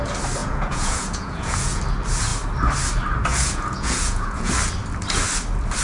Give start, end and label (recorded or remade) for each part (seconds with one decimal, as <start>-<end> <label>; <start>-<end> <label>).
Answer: 0.0-0.4 recorded; 0.4-1.8 remade; 1.8-3.3 recorded; 3.3-4.5 remade; 4.5-5.8 recorded